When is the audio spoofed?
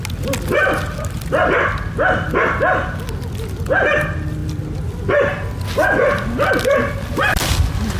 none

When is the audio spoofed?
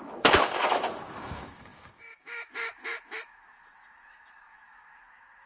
0.0-5.5 (autoencoder, DAC-VAE)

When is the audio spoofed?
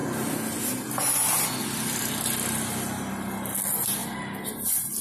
none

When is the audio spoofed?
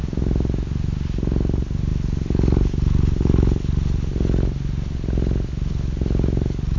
none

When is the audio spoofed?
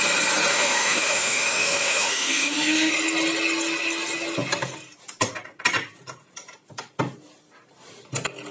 0.5-2.9 (autoencoder, DAC-VAE)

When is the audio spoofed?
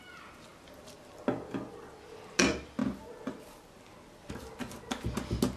none